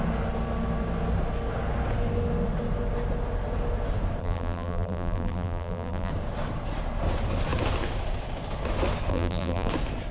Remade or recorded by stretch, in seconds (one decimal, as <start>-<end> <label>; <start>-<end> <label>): 0.0-4.2 recorded; 4.2-6.1 remade; 6.1-9.1 recorded; 9.1-9.7 remade; 9.7-10.1 recorded